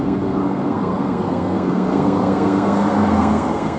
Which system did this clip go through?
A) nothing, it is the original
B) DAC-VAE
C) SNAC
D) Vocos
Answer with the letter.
C